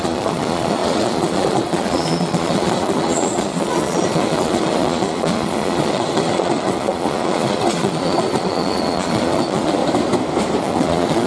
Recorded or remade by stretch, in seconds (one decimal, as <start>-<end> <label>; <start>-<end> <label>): 0.0-9.8 remade; 9.8-10.6 recorded; 10.6-11.3 remade